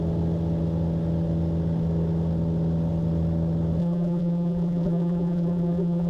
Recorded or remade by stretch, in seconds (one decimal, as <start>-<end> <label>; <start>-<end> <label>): 0.0-3.8 recorded; 3.8-6.1 remade